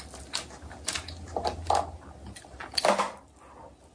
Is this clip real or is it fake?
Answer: real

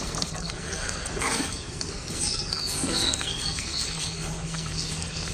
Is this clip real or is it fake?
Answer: fake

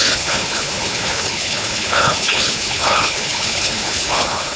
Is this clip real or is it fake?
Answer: fake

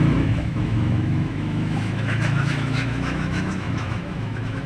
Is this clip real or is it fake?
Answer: fake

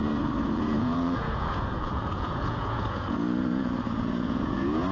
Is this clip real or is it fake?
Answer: fake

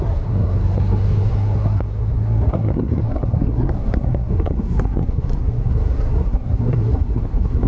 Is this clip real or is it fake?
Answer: fake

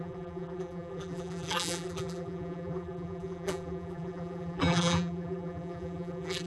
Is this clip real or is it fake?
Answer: fake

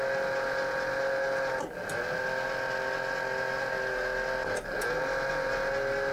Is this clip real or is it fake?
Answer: real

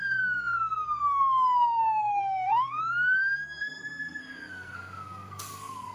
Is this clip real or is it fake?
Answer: fake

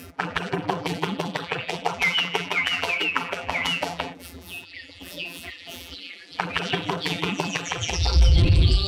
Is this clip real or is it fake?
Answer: fake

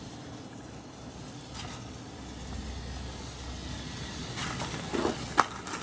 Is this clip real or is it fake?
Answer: real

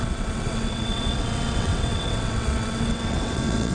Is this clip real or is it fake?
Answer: fake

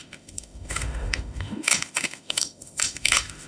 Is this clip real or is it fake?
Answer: fake